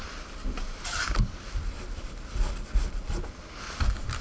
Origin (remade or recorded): recorded